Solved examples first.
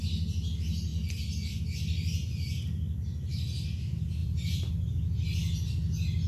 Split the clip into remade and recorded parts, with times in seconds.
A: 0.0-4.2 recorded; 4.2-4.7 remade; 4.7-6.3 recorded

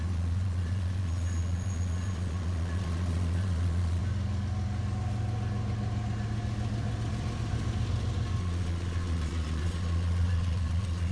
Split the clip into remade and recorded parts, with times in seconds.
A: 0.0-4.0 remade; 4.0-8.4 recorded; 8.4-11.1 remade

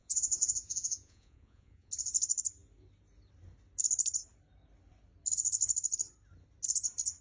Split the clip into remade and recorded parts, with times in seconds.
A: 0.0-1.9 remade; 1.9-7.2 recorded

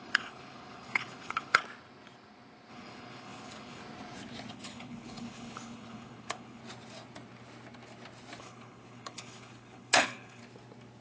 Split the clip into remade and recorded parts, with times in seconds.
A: 0.0-1.6 remade; 1.6-2.7 recorded; 2.7-3.8 remade; 3.8-4.5 recorded; 4.5-6.6 remade; 6.6-8.4 recorded; 8.4-10.4 remade; 10.4-11.0 recorded

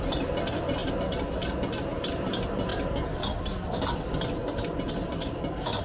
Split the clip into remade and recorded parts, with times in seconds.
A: 0.0-2.7 remade; 2.7-3.4 recorded; 3.4-5.8 remade